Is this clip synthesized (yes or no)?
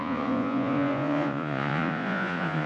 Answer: yes